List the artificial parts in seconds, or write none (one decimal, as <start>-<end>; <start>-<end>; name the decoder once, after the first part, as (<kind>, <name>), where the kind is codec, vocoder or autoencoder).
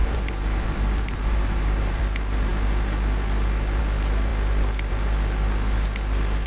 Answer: 0.0-2.0 (vocoder, BigVGAN v2)